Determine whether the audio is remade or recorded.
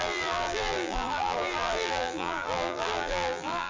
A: remade